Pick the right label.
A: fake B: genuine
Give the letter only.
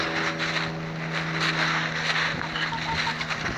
B